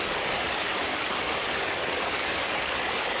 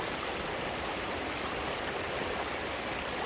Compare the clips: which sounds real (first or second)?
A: second